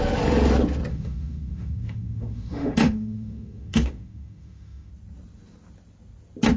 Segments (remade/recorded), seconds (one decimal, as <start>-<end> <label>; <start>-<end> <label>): 0.0-0.9 recorded; 0.9-4.9 remade; 4.9-6.6 recorded